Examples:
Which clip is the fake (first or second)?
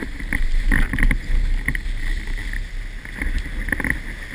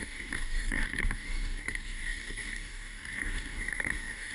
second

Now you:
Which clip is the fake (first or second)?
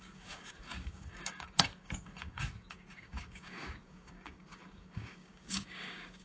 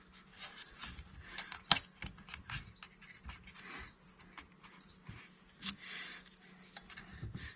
first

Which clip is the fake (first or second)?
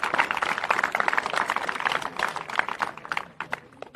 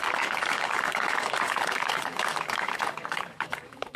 second